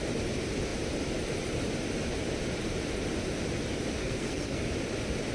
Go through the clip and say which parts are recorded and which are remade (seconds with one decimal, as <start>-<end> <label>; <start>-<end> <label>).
0.0-4.0 recorded; 4.0-4.6 remade; 4.6-5.3 recorded